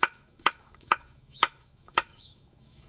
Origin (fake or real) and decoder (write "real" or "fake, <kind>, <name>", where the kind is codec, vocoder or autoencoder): fake, autoencoder, DAC-VAE